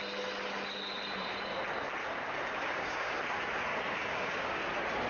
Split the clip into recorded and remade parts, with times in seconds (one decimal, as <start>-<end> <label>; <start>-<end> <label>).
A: 0.0-2.0 recorded; 2.0-3.1 remade; 3.1-3.7 recorded; 3.7-4.6 remade; 4.6-5.1 recorded